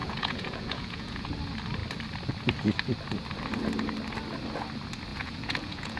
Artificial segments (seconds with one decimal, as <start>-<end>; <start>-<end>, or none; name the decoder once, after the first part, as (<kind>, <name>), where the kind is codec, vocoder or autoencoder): 0.0-1.3 (vocoder, Vocos); 5.1-6.0